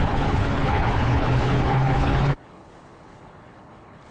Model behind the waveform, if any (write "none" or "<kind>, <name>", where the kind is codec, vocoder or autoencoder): codec, HILCodec